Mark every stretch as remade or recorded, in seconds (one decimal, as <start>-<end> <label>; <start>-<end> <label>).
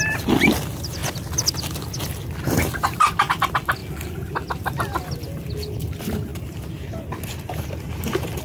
0.0-1.0 remade; 1.0-2.0 recorded; 2.0-3.8 remade; 3.8-5.8 recorded; 5.8-8.4 remade